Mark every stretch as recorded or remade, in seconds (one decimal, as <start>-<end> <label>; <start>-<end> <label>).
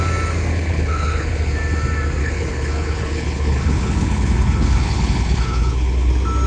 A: 0.0-0.5 recorded; 0.5-1.5 remade; 1.5-2.2 recorded; 2.2-6.1 remade; 6.1-6.5 recorded